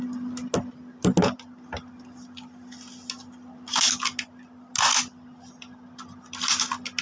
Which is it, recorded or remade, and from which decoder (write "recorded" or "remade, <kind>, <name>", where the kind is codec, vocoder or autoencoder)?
recorded